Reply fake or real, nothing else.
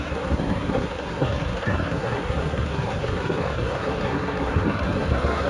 fake